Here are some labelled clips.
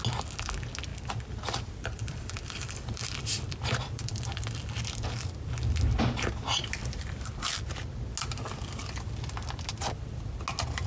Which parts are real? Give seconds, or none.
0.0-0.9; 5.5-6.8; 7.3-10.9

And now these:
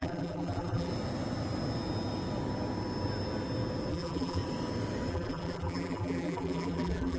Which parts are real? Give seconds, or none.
0.9-3.9; 4.4-5.1

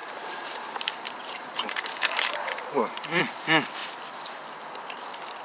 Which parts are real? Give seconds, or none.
3.2-5.4

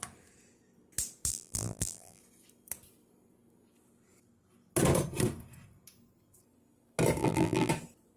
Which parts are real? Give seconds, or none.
0.0-1.3; 2.2-7.2; 7.7-8.2

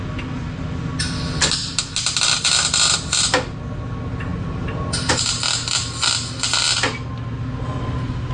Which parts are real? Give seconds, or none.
0.0-4.3; 5.1-8.3

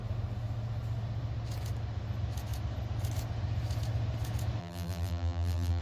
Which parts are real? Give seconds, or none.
0.0-4.6

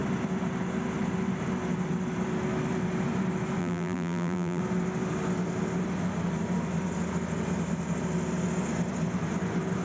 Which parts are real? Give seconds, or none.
0.0-3.6; 4.6-9.8